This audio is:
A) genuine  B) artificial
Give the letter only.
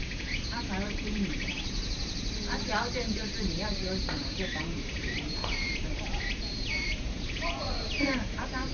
B